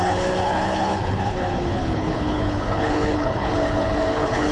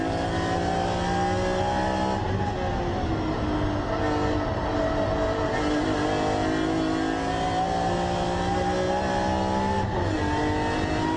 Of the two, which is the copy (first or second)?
first